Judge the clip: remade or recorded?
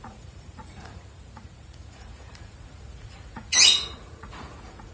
remade